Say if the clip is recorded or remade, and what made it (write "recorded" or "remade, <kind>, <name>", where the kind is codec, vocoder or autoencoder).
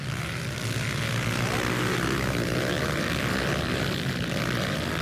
recorded